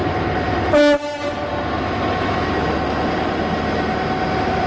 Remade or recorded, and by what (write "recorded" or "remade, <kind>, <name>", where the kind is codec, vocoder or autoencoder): recorded